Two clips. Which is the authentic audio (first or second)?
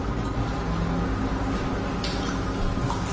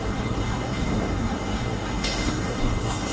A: first